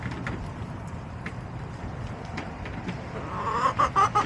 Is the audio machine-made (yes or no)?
yes